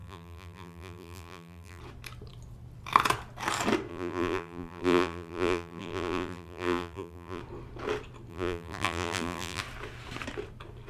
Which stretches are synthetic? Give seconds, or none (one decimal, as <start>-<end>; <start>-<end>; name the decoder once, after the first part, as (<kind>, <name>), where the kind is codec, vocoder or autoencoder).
0.0-1.8 (vocoder, BigVGAN v2); 3.9-7.4; 8.3-9.6